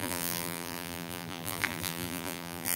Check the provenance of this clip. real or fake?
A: fake